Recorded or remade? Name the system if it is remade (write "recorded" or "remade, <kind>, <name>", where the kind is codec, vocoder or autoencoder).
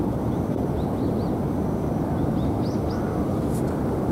recorded